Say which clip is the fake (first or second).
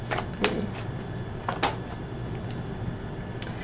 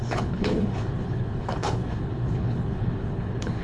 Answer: second